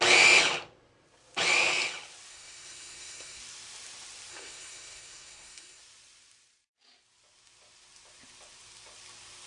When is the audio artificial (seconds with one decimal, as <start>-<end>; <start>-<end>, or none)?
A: 2.3-3.4; 4.3-5.8